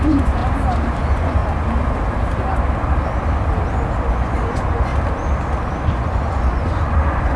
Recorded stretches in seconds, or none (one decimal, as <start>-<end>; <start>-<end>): 0.4-1.0; 1.4-4.1; 4.9-5.7